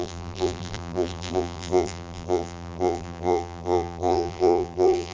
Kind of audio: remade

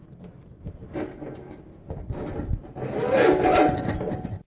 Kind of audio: recorded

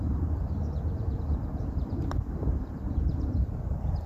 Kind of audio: recorded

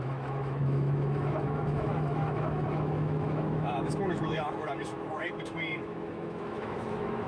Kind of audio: remade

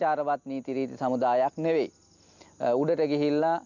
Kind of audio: recorded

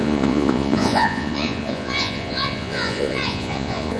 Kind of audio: remade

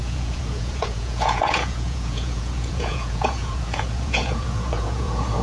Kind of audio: remade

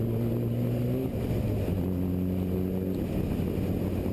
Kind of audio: recorded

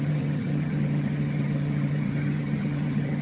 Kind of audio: remade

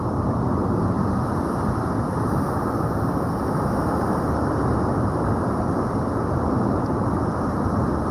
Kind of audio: recorded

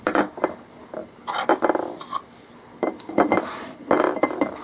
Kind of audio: recorded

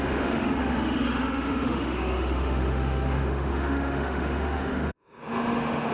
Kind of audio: remade